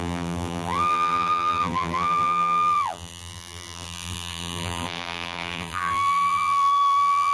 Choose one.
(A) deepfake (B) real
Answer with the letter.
A